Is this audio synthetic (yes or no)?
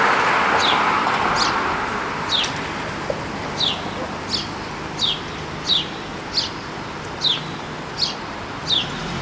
no